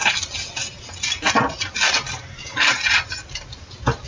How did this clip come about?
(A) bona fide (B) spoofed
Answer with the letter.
A